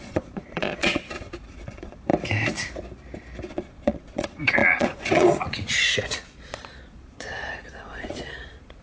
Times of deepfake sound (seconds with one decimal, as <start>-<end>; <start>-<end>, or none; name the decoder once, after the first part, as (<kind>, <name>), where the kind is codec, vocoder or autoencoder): 0.0-2.1 (vocoder, Vocos); 3.5-8.8